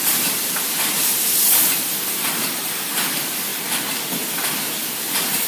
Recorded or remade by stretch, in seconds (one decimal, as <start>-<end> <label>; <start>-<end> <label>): 0.0-2.2 recorded; 2.2-3.5 remade; 3.5-4.6 recorded; 4.6-5.5 remade